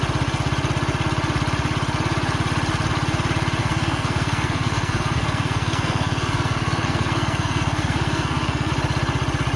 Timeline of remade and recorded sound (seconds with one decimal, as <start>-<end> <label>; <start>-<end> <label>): 0.0-3.6 recorded; 3.6-8.7 remade; 8.7-9.6 recorded